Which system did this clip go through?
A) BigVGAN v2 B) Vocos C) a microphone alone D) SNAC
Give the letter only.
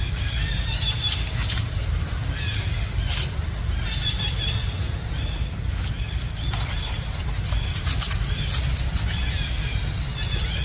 C